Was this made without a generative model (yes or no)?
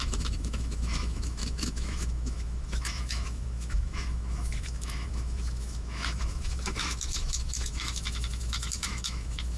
no